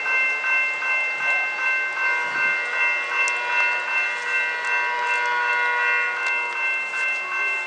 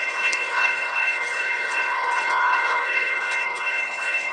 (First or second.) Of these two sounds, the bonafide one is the first